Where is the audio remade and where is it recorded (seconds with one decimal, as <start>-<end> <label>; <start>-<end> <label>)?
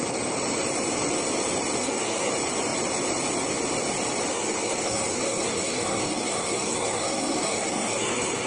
0.0-1.8 recorded; 1.8-2.3 remade; 2.3-4.3 recorded; 4.3-8.5 remade